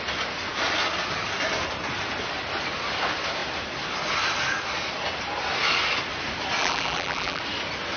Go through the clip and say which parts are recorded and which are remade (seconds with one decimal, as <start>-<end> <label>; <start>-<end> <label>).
0.0-6.6 recorded; 6.6-7.4 remade; 7.4-8.0 recorded